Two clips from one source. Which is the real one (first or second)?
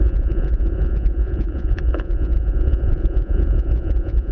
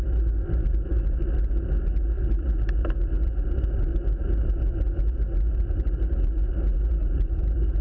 second